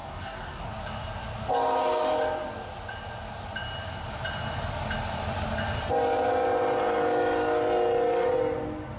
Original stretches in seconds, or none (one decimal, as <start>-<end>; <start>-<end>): 0.7-9.0